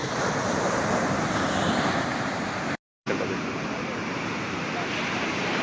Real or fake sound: real